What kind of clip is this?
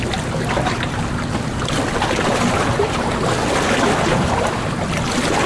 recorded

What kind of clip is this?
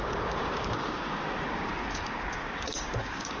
remade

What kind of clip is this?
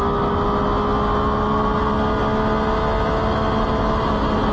recorded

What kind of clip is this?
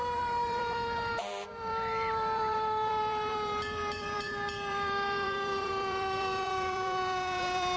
remade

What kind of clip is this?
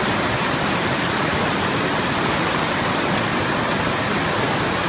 recorded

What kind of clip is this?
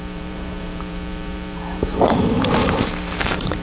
remade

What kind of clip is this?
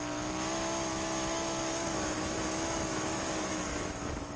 remade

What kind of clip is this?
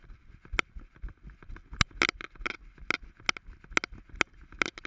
recorded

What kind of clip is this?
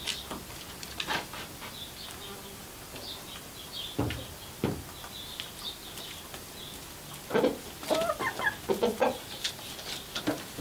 recorded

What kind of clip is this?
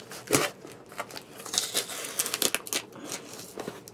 recorded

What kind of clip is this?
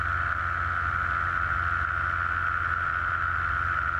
recorded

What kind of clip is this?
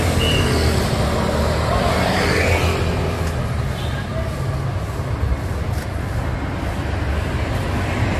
recorded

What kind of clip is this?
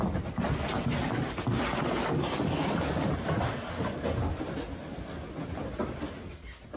recorded